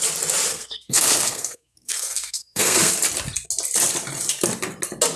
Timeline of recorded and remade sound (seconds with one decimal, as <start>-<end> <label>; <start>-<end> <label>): 0.0-0.5 recorded; 0.5-2.9 remade; 2.9-5.2 recorded

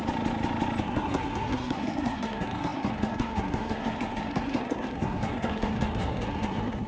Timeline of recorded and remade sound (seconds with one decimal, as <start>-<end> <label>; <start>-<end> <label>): 0.0-0.8 recorded; 0.8-6.9 remade

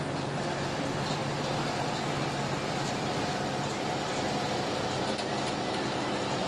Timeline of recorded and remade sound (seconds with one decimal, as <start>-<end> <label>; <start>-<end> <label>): 0.0-6.5 recorded

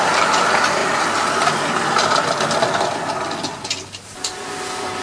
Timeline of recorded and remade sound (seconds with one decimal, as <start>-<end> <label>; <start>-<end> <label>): 0.0-5.0 recorded

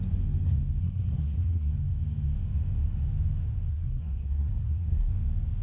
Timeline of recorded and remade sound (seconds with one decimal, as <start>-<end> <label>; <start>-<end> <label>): 0.0-0.8 recorded; 0.8-1.7 remade; 1.7-3.7 recorded; 3.7-5.1 remade; 5.1-5.6 recorded

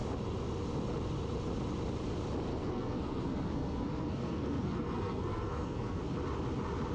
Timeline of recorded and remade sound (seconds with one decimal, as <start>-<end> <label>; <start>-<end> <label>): 0.0-2.5 recorded; 2.5-6.0 remade; 6.0-6.9 recorded